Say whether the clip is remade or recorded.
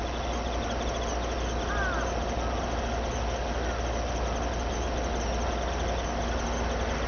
recorded